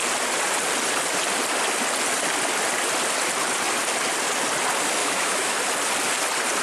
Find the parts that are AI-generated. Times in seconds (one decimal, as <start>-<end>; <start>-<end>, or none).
5.0-5.6